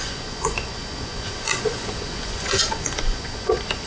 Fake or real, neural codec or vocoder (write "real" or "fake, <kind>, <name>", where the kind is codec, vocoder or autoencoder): fake, vocoder, Vocos